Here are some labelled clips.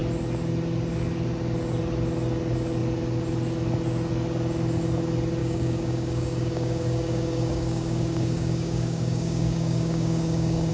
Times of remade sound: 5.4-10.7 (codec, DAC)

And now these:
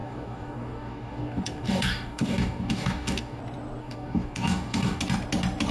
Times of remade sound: 0.0-3.4 (codec, DAC); 3.8-5.0

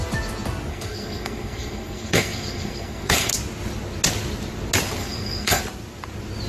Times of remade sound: 0.7-3.3 (codec, SNAC); 5.0-5.6

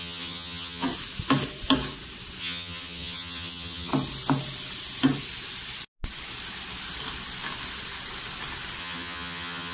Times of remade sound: 0.0-0.9 (vocoder, HiFi-GAN); 2.4-3.9; 8.8-9.7